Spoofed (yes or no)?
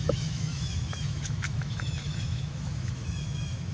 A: yes